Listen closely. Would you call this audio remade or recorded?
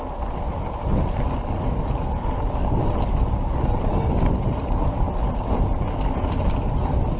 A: recorded